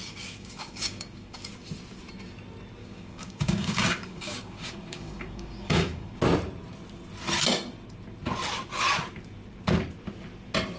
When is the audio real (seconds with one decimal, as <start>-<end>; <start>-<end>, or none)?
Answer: 1.5-2.8; 6.2-10.8